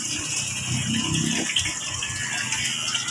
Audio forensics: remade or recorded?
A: recorded